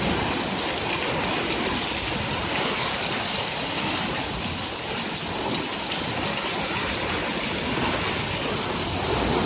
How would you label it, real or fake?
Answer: real